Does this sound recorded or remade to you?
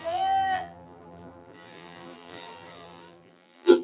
remade